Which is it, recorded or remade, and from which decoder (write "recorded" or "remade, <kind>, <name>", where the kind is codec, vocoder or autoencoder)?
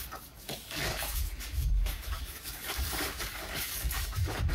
remade, codec, DAC